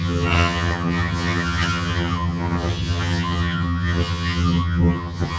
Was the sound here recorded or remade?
remade